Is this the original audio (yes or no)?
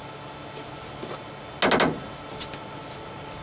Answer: yes